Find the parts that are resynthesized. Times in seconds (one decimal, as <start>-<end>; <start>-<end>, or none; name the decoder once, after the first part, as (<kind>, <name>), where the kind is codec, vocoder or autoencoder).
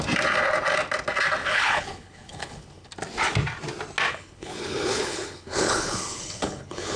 1.4-2.9 (codec, HILCodec); 4.1-7.0